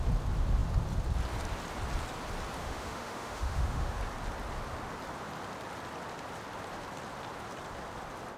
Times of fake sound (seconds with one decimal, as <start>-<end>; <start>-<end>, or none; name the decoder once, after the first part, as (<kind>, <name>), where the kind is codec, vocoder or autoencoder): 2.6-4.0 (autoencoder, DAC-VAE)